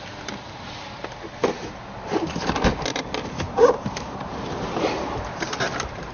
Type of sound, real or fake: fake